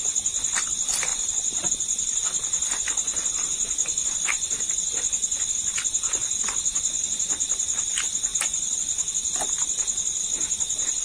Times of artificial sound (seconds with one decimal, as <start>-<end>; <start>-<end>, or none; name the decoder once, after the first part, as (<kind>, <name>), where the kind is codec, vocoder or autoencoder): none